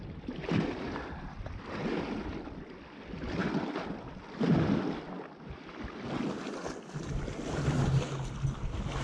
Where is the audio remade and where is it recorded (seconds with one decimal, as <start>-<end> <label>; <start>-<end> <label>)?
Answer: 0.0-9.0 recorded